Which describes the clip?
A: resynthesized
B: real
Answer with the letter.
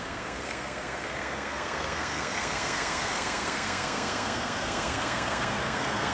A